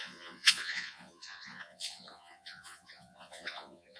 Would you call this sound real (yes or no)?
no